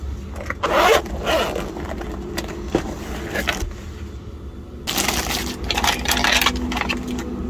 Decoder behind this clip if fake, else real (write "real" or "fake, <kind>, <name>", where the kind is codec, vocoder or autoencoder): real